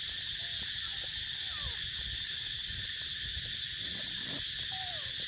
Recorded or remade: recorded